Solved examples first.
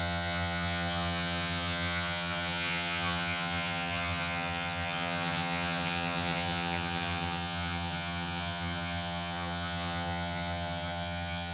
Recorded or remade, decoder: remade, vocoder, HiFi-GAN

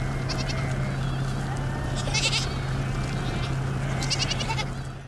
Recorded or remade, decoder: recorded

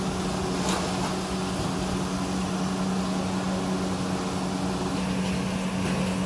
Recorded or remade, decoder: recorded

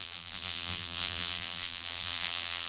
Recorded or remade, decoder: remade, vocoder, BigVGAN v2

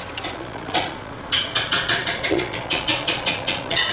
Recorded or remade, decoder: remade, vocoder, Vocos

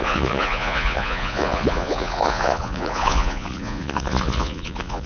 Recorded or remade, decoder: remade, vocoder, Vocos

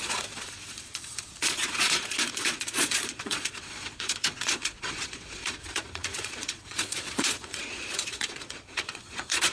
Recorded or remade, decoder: remade, vocoder, Vocos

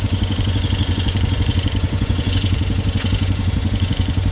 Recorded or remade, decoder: remade, vocoder, Vocos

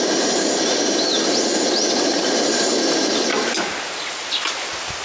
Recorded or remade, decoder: recorded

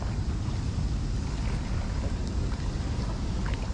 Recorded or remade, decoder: recorded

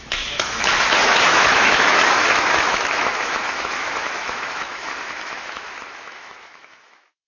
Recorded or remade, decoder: remade, autoencoder, DAC-VAE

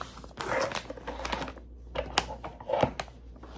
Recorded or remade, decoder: recorded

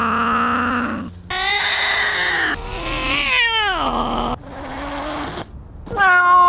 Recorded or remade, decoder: recorded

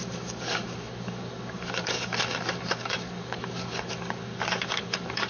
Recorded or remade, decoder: remade, codec, DAC